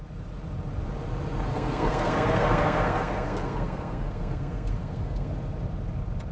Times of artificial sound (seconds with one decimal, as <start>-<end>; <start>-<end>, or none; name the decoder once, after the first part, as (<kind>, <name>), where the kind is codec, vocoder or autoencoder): 1.5-5.3 (codec, SNAC)